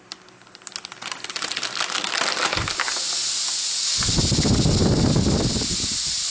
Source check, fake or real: real